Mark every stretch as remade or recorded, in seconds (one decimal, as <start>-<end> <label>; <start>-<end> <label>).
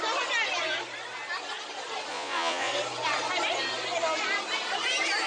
0.0-2.1 recorded; 2.1-2.7 remade; 2.7-5.3 recorded